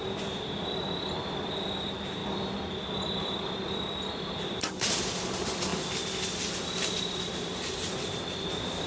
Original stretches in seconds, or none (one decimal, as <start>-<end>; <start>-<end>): 2.2-3.2; 5.7-7.0